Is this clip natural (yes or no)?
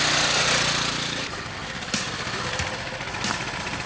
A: no